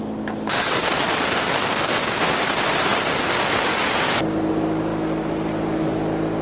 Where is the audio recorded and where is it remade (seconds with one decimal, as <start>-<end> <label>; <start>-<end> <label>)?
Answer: 0.0-6.4 recorded